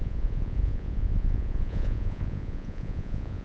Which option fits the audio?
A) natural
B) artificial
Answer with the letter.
B